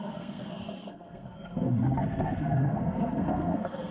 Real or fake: fake